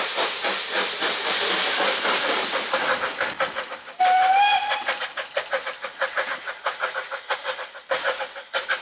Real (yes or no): yes